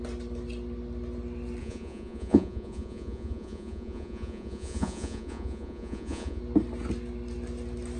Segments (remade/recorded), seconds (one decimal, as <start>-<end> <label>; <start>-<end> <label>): 0.0-1.6 recorded; 1.6-6.4 remade; 6.4-8.0 recorded